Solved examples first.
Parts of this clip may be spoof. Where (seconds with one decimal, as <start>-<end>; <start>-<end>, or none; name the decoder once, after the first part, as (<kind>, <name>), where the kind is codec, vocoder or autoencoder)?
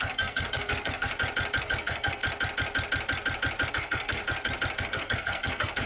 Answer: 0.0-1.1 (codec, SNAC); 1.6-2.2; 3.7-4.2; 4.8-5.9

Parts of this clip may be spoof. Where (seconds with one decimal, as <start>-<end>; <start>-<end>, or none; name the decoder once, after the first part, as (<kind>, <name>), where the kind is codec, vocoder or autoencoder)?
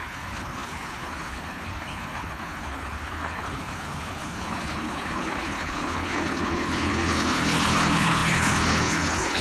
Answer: 0.0-9.4 (codec, HILCodec)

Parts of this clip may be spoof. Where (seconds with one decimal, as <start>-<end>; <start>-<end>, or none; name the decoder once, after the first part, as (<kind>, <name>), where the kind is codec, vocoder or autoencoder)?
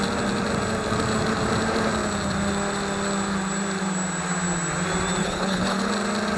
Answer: 5.2-5.9 (codec, HILCodec)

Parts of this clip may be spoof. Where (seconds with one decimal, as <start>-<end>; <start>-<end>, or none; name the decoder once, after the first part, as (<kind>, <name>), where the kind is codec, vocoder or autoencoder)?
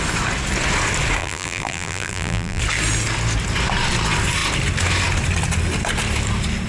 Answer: 1.2-2.6 (vocoder, BigVGAN v2)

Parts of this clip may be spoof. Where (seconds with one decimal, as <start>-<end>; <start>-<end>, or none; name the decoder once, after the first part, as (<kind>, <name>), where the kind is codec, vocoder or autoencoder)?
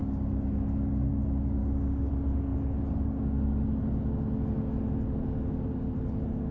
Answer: 1.6-2.1 (codec, DAC)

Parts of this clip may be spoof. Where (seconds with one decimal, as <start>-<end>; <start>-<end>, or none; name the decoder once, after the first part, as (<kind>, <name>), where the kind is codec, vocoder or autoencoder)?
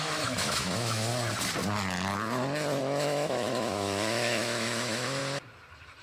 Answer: 0.0-1.1 (autoencoder, DAC-VAE); 2.8-5.2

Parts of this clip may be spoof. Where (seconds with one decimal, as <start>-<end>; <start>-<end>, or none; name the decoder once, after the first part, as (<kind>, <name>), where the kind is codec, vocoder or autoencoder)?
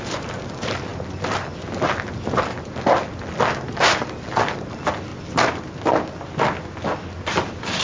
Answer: none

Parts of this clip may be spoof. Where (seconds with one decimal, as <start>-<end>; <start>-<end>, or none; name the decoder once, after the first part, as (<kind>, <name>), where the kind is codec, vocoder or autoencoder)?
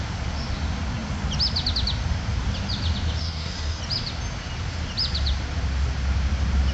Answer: 3.2-3.8 (codec, SNAC)